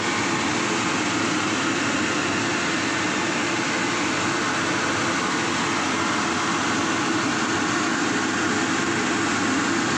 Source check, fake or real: real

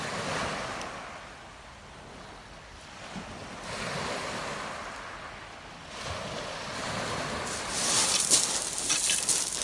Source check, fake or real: real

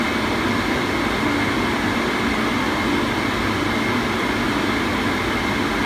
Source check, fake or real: real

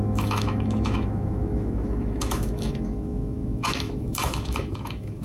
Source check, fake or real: fake